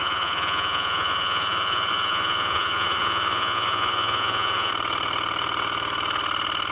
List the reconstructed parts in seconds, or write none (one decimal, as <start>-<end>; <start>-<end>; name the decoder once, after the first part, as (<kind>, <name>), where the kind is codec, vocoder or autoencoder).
0.0-4.7 (vocoder, Vocos)